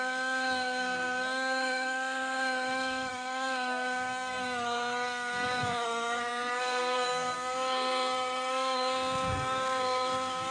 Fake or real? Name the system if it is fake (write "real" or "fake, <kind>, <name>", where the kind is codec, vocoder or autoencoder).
fake, codec, SNAC